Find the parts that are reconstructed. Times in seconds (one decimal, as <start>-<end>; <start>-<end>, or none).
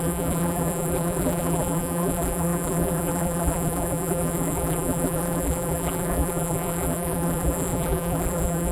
0.0-8.7